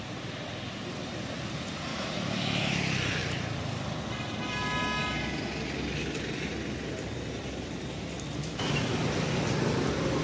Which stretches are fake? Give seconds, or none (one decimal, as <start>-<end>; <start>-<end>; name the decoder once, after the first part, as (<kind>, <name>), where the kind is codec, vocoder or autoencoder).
1.9-2.8 (autoencoder, DAC-VAE); 8.4-9.0